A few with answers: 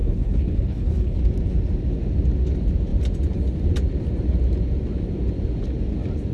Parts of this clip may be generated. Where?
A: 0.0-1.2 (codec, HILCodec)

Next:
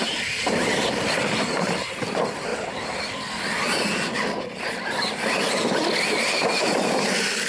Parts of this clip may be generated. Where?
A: 2.5-3.1 (vocoder, BigVGAN v2)

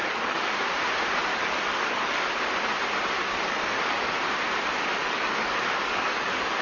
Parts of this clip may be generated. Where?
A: 0.0-0.7 (codec, DAC); 1.3-2.3; 3.3-4.1; 5.0-6.6